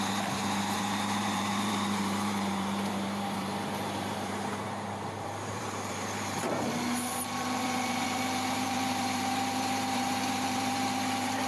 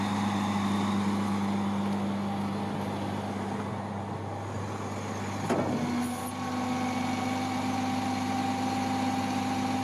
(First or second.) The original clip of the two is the second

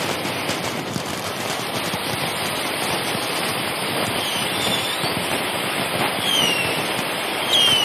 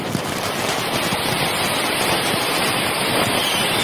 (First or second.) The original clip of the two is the second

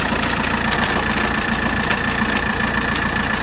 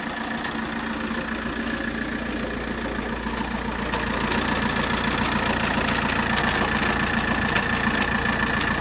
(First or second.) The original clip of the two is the second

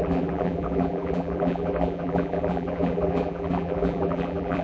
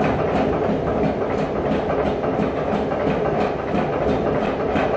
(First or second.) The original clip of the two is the second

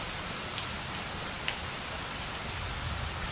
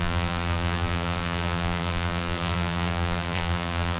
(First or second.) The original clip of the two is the first